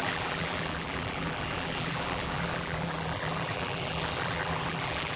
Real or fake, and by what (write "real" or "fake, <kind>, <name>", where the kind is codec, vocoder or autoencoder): fake, vocoder, BigVGAN v2